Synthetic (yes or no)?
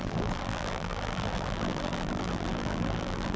yes